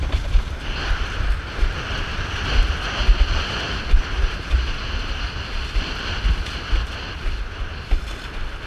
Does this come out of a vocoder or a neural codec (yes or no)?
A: no